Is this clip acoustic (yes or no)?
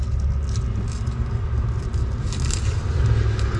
yes